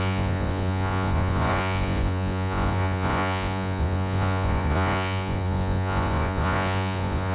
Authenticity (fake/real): fake